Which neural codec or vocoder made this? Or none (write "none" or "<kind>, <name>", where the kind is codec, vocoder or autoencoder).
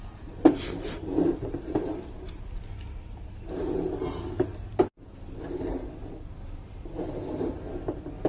none